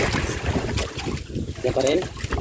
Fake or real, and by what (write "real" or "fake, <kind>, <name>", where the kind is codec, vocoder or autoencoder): real